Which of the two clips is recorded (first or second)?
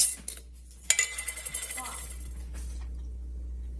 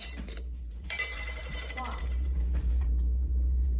first